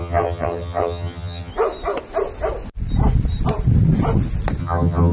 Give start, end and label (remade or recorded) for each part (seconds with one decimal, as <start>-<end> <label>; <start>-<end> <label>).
0.0-1.5 remade; 1.5-4.6 recorded; 4.6-5.1 remade